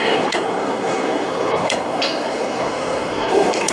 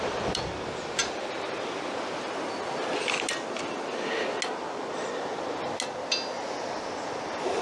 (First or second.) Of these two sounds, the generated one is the first